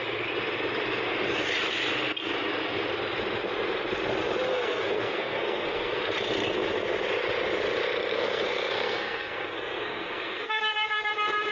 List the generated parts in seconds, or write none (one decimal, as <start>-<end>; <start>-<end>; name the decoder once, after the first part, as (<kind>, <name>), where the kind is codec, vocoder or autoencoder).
4.5-6.0 (codec, SNAC); 8.1-11.1

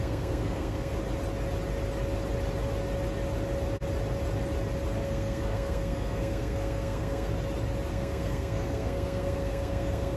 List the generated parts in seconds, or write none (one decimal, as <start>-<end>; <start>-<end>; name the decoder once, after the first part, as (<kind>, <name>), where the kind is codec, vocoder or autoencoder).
0.0-0.9 (codec, SNAC); 5.0-7.3; 7.9-10.2

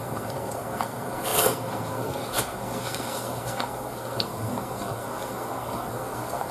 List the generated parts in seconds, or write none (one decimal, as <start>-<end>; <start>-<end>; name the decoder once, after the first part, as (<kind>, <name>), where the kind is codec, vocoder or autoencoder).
0.0-6.5 (codec, SNAC)

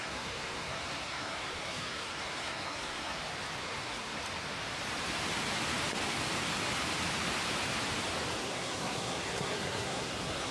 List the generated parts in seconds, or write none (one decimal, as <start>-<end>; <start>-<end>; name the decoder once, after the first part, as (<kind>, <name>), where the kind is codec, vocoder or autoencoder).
0.0-3.2 (codec, SNAC); 3.6-4.2; 8.4-10.5

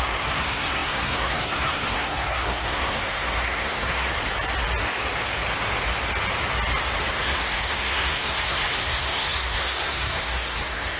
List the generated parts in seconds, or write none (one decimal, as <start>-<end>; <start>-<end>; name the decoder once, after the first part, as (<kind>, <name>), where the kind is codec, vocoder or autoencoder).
0.0-4.1 (codec, SNAC); 7.1-11.0

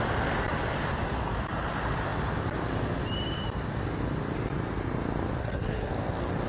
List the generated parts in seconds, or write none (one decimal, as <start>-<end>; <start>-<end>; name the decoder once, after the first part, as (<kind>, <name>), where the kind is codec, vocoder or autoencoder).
5.4-5.9 (codec, SNAC)